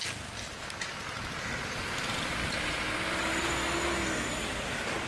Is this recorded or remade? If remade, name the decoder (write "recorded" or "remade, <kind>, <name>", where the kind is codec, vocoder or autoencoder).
recorded